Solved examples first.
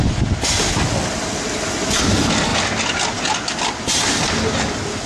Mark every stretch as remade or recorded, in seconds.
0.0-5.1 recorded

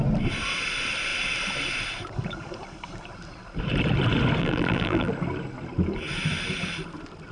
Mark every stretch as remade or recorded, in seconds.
0.0-4.4 recorded; 4.4-5.1 remade; 5.1-7.3 recorded